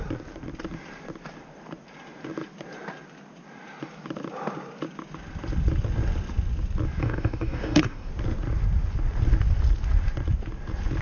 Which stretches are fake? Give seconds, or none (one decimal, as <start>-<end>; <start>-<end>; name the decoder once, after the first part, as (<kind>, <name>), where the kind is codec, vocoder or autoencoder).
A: 7.0-8.1 (codec, DAC)

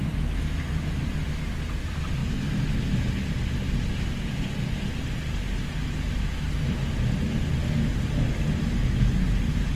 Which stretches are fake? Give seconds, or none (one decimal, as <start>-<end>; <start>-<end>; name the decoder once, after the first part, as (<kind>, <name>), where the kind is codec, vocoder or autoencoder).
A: none

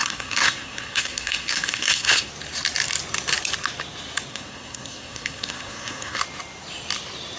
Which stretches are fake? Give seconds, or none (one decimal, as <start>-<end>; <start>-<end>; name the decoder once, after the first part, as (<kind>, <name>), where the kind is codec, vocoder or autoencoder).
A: 0.0-2.3 (codec, SNAC); 4.3-6.2

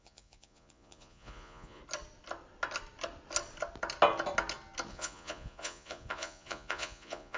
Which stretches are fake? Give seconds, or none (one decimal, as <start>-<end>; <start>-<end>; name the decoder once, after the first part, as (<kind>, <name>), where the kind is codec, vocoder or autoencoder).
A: 0.0-1.8 (vocoder, Vocos); 4.9-7.4

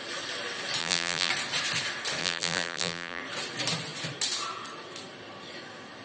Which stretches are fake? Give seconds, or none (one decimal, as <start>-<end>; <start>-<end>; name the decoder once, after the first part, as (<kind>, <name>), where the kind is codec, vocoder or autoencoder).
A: 0.8-1.3 (vocoder, BigVGAN v2); 2.2-3.2

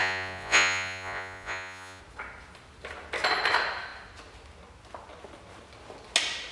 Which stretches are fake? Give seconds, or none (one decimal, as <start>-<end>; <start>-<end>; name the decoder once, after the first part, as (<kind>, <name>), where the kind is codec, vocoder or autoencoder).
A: 0.0-2.0 (vocoder, Vocos)

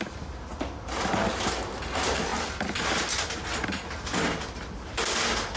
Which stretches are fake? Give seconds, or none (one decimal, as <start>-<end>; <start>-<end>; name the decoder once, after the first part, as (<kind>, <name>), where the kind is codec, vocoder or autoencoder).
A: none